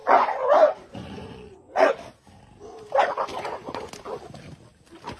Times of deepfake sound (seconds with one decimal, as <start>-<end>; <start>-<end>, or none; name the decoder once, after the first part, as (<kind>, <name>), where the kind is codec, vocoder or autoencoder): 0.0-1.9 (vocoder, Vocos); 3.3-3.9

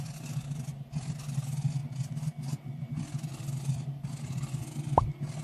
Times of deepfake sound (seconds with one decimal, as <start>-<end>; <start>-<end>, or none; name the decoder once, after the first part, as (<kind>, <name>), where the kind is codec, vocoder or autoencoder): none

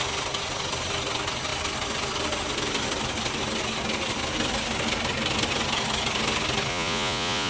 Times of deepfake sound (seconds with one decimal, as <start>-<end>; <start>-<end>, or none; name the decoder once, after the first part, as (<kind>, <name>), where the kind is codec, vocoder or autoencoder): 6.7-7.5 (vocoder, Vocos)

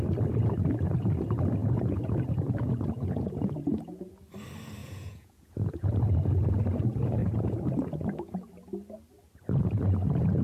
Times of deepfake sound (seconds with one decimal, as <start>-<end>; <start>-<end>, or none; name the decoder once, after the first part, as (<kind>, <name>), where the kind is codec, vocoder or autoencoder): 1.6-4.1 (vocoder, Vocos); 4.8-5.9; 7.2-8.5

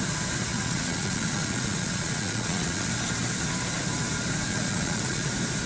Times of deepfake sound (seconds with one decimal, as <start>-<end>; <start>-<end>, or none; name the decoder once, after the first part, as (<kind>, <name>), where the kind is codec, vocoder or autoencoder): 0.5-2.9 (vocoder, Vocos); 4.5-5.3

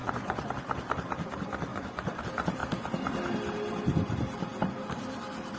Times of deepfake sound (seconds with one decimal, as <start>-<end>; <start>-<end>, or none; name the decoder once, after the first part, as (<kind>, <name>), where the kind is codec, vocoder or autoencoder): 0.0-0.5 (vocoder, Vocos); 1.7-2.2